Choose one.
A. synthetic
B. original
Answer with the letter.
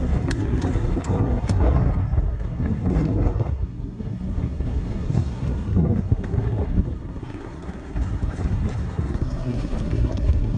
A